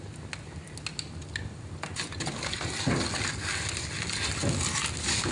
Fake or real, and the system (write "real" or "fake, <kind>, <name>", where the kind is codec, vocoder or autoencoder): real